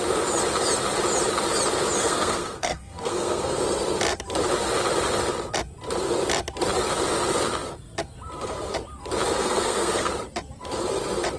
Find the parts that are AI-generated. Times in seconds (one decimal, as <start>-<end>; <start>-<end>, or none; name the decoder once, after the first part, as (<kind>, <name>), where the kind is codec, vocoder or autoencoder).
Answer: 2.0-3.6 (codec, SNAC); 9.4-10.1